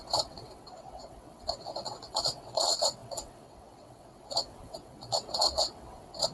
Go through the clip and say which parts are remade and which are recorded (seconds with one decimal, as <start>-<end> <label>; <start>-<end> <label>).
0.0-6.3 remade